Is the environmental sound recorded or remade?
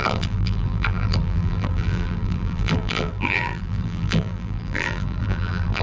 remade